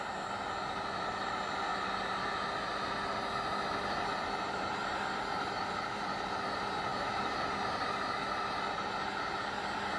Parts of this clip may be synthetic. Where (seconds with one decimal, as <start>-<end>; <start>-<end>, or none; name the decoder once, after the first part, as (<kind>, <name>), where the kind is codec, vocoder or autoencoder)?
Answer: 0.0-1.7 (vocoder, BigVGAN v2); 4.8-6.9